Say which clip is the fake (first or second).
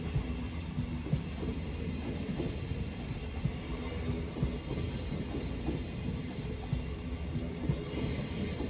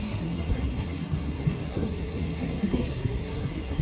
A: second